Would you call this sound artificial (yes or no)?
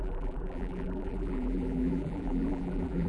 yes